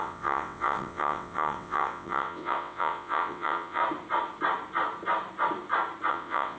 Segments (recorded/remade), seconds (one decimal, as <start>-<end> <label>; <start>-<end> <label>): 0.0-3.8 remade; 3.8-6.1 recorded; 6.1-6.6 remade